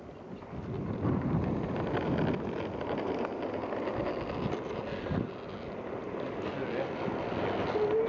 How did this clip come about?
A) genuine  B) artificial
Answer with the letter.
A